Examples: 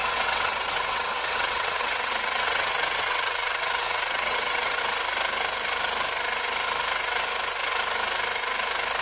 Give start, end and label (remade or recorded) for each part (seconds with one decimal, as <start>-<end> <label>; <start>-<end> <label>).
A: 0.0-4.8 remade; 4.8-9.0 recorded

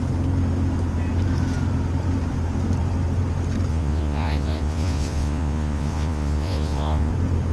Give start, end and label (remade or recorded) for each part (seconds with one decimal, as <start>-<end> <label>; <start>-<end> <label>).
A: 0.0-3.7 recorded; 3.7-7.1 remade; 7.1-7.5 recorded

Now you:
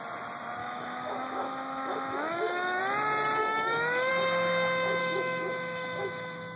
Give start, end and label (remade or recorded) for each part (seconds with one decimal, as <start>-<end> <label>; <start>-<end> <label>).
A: 0.0-0.6 recorded; 0.6-2.8 remade; 2.8-3.4 recorded; 3.4-4.1 remade; 4.1-5.0 recorded; 5.0-6.6 remade